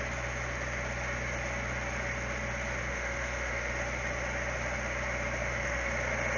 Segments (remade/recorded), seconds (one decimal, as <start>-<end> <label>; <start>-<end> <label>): 0.0-2.9 recorded; 2.9-3.7 remade; 3.7-5.4 recorded; 5.4-5.9 remade; 5.9-6.4 recorded